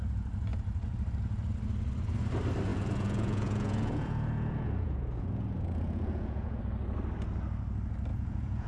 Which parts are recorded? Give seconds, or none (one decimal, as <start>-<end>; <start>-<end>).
0.0-2.7; 6.6-8.1